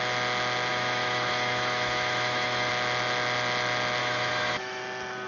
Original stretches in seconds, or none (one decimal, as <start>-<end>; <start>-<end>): 0.0-0.7; 2.7-4.0; 4.8-5.3